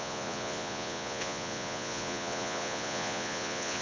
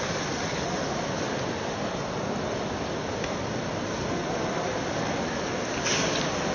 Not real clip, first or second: first